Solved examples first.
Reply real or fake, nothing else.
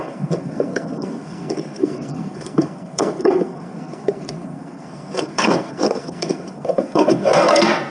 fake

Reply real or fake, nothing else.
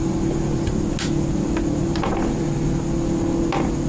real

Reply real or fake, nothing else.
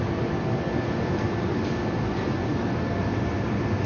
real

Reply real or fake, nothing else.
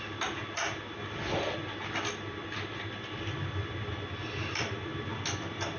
real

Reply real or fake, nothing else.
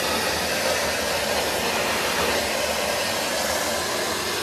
real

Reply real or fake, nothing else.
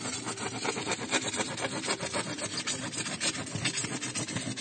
real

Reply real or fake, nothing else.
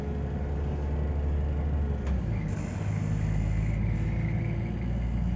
real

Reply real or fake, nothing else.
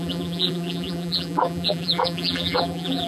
fake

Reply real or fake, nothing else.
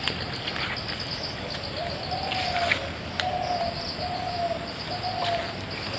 real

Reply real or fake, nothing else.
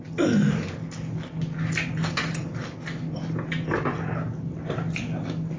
real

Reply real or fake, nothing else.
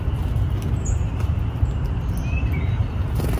real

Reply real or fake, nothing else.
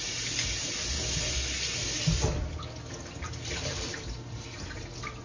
real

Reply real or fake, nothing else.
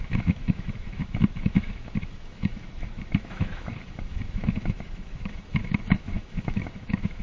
fake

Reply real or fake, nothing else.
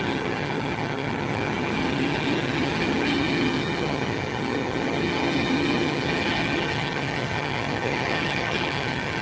fake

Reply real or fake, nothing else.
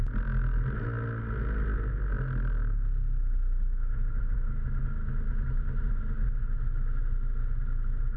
real